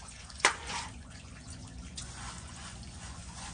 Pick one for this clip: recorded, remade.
remade